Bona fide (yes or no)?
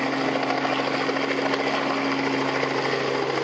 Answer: yes